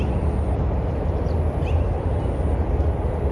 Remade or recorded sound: recorded